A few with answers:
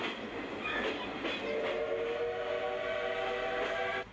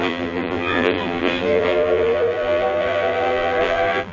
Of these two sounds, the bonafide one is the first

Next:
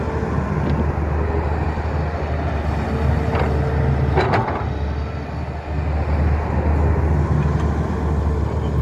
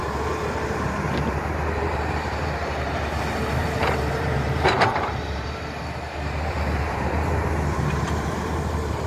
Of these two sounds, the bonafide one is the first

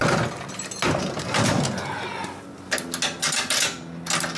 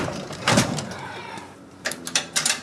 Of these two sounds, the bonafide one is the first